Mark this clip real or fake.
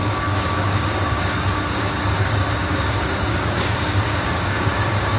fake